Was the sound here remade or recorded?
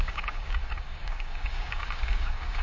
remade